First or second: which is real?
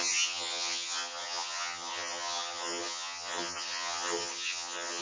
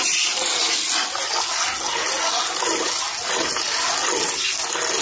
second